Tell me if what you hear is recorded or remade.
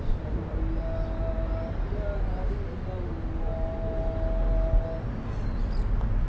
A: recorded